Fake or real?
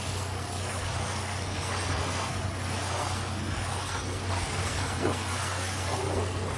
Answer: fake